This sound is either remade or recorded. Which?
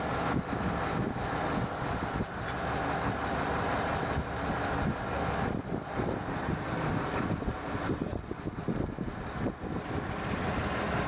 recorded